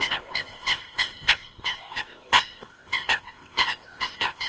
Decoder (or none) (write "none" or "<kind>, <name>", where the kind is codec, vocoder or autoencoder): codec, ZipCodec